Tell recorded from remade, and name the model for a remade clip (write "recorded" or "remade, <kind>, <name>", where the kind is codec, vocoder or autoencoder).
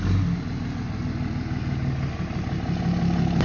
recorded